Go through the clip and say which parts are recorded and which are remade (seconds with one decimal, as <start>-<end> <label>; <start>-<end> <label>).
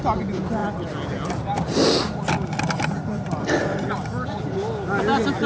0.0-5.5 recorded